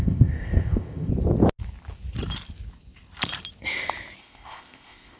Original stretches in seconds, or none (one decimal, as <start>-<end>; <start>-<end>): 1.1-4.2